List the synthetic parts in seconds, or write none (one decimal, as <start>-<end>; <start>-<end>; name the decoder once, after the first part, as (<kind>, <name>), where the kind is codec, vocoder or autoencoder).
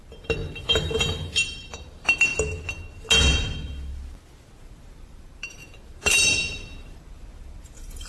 0.0-2.3 (vocoder, BigVGAN v2); 4.6-8.1